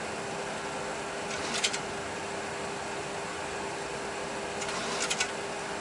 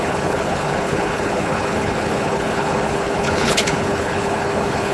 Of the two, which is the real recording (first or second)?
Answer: first